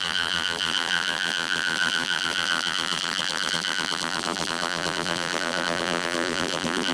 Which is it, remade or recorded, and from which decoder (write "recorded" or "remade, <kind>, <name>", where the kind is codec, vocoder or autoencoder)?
remade, vocoder, BigVGAN v2